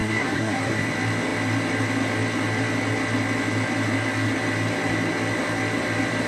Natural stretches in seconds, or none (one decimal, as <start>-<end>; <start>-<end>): 0.9-6.3